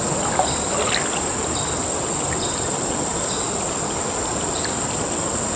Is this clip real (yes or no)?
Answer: yes